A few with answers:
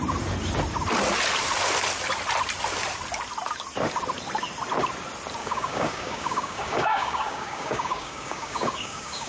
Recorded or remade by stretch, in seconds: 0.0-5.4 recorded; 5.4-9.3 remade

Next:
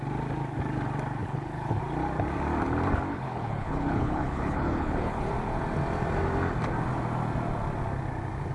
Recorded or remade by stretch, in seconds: 0.0-1.2 recorded; 1.2-1.8 remade; 1.8-3.1 recorded; 3.1-5.3 remade; 5.3-8.5 recorded

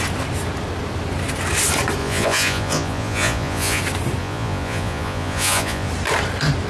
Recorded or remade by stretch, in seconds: 0.0-2.0 recorded; 2.0-3.8 remade; 3.8-4.2 recorded; 4.2-5.9 remade; 5.9-6.7 recorded

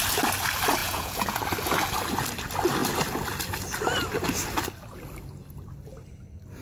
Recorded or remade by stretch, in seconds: 0.0-0.8 recorded; 0.8-1.4 remade; 1.4-6.6 recorded

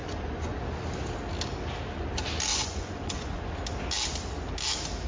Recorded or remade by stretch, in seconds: 0.0-0.6 remade; 0.6-2.5 recorded; 2.5-3.5 remade; 3.5-5.1 recorded